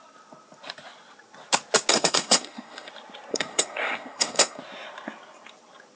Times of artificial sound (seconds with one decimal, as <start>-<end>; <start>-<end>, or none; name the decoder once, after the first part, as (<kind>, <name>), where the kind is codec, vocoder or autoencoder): 1.9-2.9 (codec, SNAC); 3.3-4.6